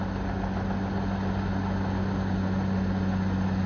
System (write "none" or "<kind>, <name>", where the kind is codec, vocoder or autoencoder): none